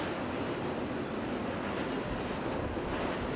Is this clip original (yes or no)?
yes